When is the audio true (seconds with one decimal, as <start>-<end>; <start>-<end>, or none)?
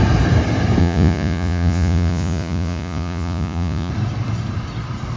0.0-0.8; 3.9-5.2